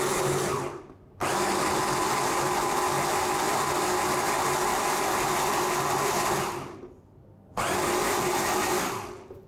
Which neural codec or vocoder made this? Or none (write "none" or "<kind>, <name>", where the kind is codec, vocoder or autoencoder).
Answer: none